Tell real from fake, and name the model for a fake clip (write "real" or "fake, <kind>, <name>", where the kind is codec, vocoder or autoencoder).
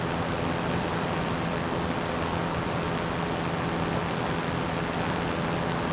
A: real